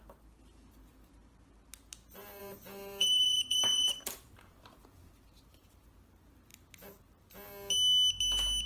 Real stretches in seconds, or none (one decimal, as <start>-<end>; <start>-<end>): 0.0-2.4; 5.1-8.7

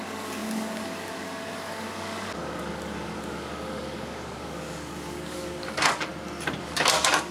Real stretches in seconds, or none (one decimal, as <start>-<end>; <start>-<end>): 6.1-6.6

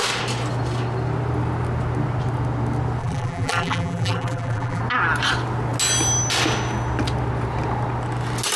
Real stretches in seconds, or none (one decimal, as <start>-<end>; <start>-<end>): 0.0-3.0; 4.8-8.6